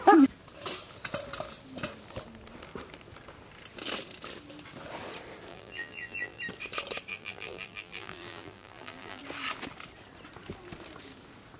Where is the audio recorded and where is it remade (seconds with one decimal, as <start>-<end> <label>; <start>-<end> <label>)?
0.0-5.5 recorded; 5.5-6.4 remade; 6.4-7.1 recorded; 7.1-9.2 remade; 9.2-11.6 recorded

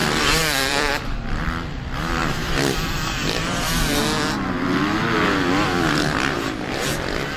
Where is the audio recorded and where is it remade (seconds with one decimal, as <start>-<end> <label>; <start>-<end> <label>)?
0.0-0.9 remade; 0.9-2.2 recorded; 2.2-4.0 remade; 4.0-7.4 recorded

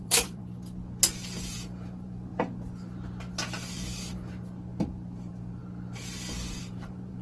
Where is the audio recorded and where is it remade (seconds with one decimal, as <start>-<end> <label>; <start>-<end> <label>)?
0.0-0.4 remade; 0.4-1.4 recorded; 1.4-2.3 remade; 2.3-4.8 recorded; 4.8-5.6 remade; 5.6-6.6 recorded; 6.6-7.2 remade

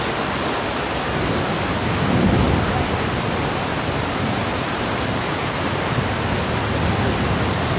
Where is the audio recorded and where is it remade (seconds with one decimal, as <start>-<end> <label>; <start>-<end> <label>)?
0.0-3.7 recorded; 3.7-5.2 remade; 5.2-7.8 recorded

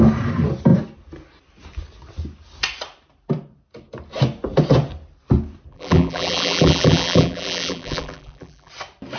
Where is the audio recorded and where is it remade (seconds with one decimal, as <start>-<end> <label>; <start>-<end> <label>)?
0.0-5.7 recorded; 5.7-8.7 remade; 8.7-9.2 recorded